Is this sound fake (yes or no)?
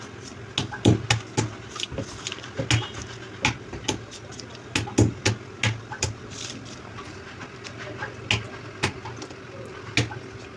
no